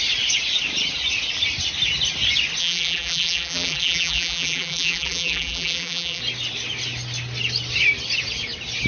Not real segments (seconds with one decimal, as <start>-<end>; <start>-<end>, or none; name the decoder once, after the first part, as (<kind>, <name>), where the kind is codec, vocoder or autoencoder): 2.6-6.2 (vocoder, BigVGAN v2)